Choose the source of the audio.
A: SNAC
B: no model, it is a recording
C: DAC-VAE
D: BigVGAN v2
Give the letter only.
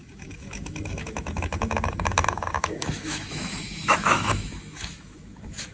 C